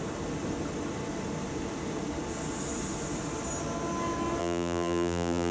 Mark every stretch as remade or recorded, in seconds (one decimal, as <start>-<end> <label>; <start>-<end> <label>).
0.0-4.4 recorded; 4.4-5.5 remade